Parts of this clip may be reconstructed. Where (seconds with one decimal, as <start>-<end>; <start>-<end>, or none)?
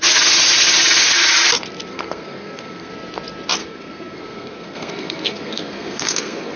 1.9-2.9; 3.6-6.6